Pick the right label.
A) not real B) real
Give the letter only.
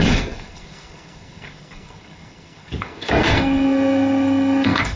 A